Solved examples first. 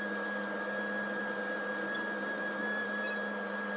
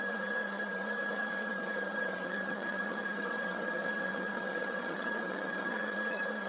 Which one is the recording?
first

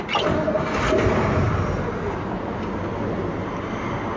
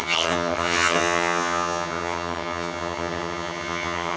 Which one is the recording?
first